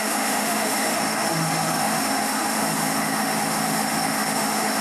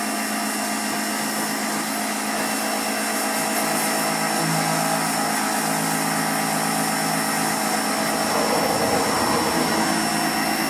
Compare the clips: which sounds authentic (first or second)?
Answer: second